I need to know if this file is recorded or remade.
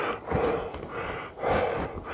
recorded